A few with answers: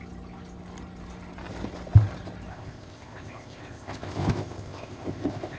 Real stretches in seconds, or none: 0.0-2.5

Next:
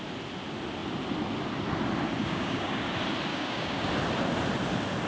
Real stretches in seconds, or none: 0.0-2.2; 2.9-3.3; 3.9-5.1

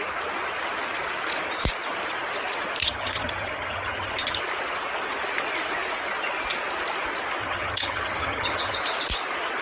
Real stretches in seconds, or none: 0.0-2.8; 4.4-7.4; 8.8-9.6

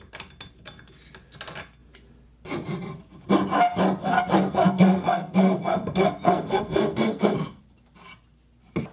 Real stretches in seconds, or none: 0.0-4.0; 7.6-8.9

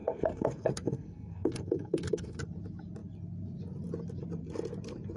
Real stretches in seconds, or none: 2.4-5.2